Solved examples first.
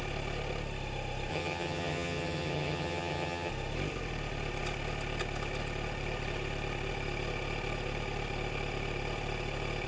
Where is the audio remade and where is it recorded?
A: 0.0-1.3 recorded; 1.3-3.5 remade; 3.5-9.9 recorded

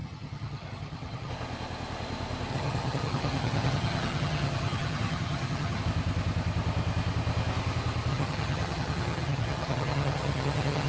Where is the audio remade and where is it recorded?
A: 0.0-1.3 remade; 1.3-2.5 recorded; 2.5-5.8 remade; 5.8-8.1 recorded; 8.1-10.9 remade